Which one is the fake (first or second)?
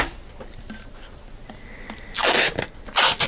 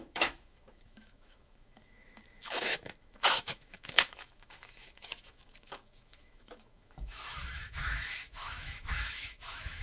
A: second